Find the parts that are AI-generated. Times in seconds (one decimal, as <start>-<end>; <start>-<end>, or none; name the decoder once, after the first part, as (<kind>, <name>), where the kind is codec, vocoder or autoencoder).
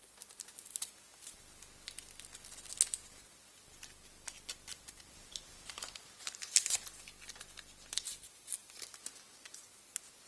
4.7-5.8 (vocoder, BigVGAN v2)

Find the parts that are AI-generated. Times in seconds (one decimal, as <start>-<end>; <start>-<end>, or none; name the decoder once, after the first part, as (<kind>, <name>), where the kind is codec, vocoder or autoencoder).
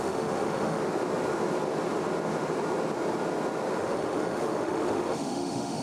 0.0-0.8 (autoencoder, DAC-VAE); 3.8-5.8